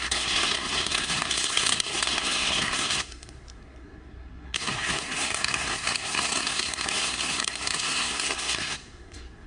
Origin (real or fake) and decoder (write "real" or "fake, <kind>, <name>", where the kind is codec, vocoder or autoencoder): fake, codec, SNAC